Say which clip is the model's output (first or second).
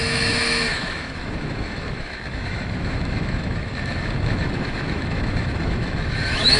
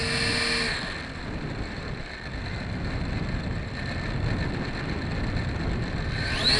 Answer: first